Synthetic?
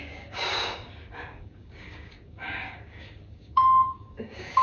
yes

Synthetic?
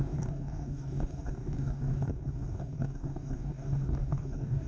yes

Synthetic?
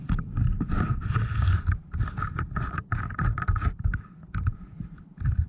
yes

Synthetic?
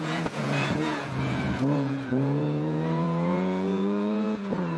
yes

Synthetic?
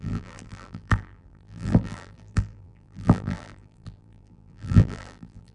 yes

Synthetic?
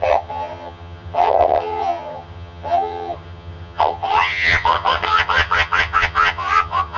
yes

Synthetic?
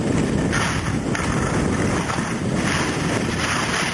no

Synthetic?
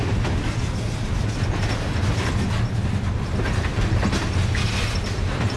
no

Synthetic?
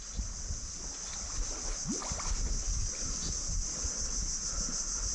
no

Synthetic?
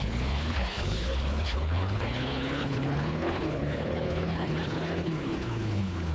yes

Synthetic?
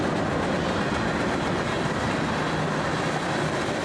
no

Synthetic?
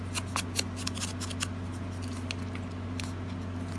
no